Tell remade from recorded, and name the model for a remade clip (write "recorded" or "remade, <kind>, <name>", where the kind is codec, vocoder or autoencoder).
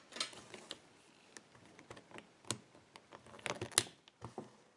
recorded